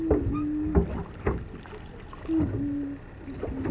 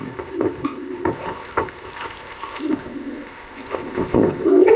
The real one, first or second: first